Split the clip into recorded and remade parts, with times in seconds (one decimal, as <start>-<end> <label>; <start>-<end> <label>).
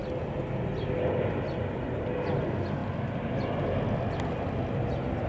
0.0-5.3 recorded